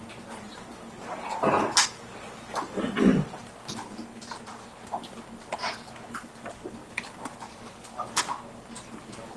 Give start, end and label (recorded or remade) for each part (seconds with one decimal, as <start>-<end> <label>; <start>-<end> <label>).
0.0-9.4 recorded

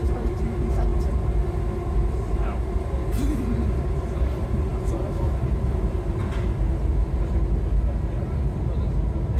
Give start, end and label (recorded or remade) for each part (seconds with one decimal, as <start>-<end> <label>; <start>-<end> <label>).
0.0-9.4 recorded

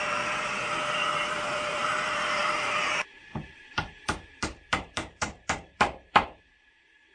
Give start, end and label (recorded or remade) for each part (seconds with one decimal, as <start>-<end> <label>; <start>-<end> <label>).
0.0-7.1 remade